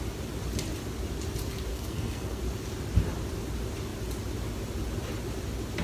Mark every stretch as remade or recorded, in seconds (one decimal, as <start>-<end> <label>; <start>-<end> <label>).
0.0-1.7 recorded; 1.7-2.4 remade; 2.4-5.8 recorded